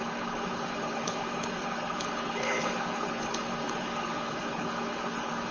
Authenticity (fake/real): fake